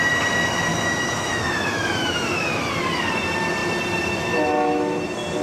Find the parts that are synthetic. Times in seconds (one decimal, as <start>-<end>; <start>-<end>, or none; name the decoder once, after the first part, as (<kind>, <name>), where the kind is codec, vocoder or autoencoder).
0.7-2.7 (autoencoder, DAC-VAE)